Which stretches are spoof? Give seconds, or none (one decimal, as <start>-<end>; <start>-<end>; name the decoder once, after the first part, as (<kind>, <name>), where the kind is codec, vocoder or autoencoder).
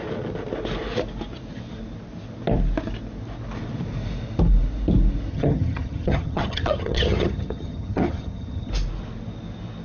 5.3-8.7 (vocoder, HiFi-GAN)